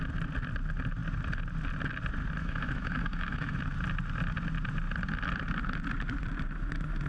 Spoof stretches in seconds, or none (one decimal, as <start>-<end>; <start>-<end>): 2.4-3.6